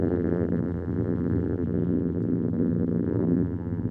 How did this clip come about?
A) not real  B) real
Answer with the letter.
A